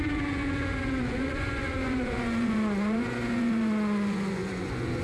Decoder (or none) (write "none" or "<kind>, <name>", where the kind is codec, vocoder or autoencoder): vocoder, Vocos